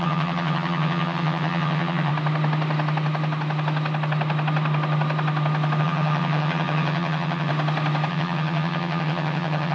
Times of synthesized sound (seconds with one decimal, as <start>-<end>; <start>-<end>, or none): 0.0-2.1; 5.8-7.5; 8.1-9.7

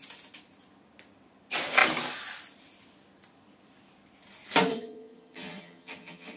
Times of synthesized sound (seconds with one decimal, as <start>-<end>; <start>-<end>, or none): 4.7-6.4

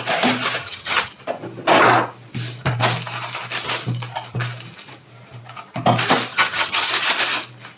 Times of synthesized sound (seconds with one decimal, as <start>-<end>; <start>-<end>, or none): 0.6-1.1; 6.3-6.9

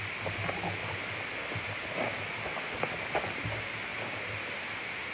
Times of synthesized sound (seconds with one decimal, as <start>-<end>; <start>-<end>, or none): none

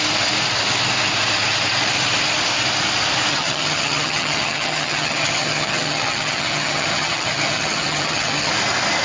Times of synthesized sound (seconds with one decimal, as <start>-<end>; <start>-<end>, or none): 3.3-8.5

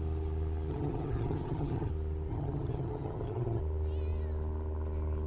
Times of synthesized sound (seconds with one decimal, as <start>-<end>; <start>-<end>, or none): 0.7-1.9; 2.3-3.6